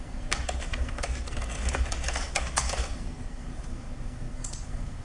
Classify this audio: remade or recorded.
remade